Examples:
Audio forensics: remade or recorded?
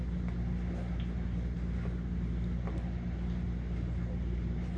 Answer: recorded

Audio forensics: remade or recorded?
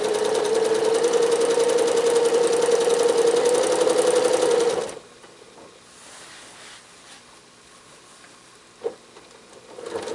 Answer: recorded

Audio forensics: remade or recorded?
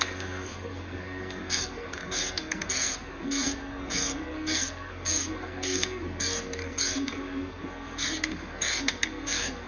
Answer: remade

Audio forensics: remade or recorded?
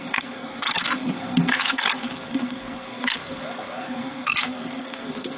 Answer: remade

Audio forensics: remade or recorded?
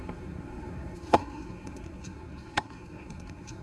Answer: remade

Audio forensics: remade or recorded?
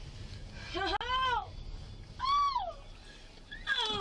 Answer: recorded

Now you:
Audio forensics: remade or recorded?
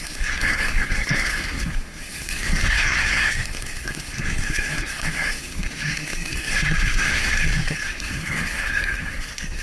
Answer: remade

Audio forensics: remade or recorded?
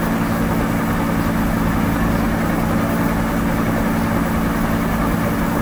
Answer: recorded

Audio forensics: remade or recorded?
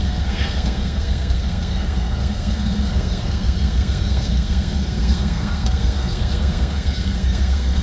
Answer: remade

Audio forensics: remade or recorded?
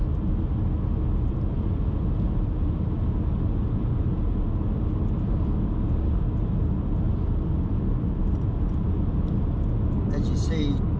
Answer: recorded